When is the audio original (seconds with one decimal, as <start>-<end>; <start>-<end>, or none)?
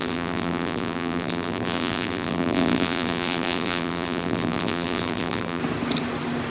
5.6-6.5